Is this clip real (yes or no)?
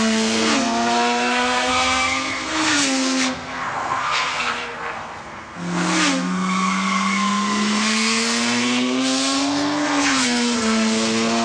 no